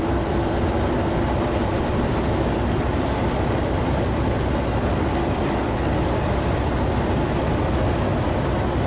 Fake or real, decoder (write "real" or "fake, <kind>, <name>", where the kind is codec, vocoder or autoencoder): fake, vocoder, BigVGAN v2